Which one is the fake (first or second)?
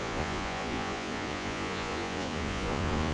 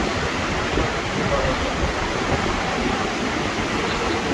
first